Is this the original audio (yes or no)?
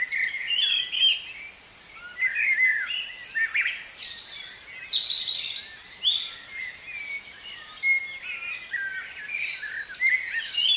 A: yes